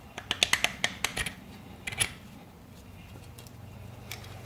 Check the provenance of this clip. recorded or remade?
recorded